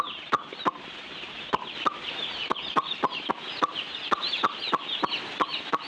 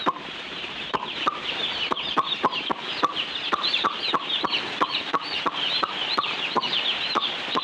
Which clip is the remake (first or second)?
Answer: second